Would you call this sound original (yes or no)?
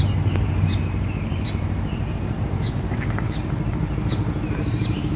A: no